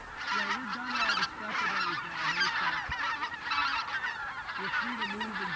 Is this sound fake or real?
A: real